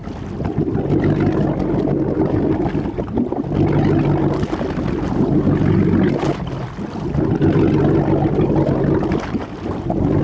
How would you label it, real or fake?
real